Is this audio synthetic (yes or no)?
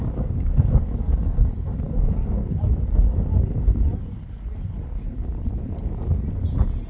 no